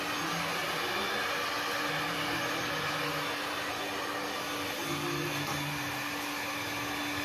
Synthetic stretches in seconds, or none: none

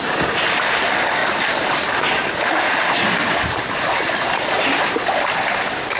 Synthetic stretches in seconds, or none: 1.2-4.8 (vocoder, BigVGAN v2)